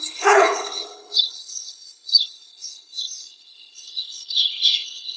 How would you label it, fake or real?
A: fake